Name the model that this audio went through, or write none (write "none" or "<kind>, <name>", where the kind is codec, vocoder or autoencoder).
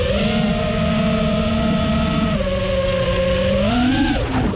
none